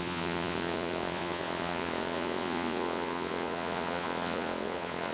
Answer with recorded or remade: remade